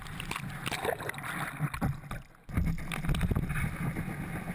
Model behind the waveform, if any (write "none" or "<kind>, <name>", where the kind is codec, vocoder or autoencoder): none